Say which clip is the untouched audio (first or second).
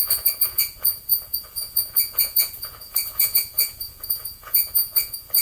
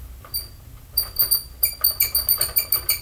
second